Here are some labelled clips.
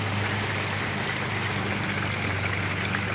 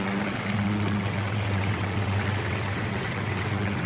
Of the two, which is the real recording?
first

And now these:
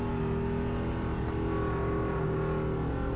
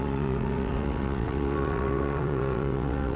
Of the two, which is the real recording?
first